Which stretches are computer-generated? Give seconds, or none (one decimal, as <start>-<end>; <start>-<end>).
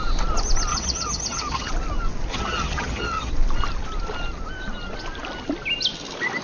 0.7-1.7; 2.3-3.3